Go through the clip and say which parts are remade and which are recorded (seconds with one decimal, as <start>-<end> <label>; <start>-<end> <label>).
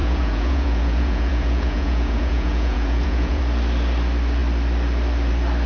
0.0-3.4 remade; 3.4-5.7 recorded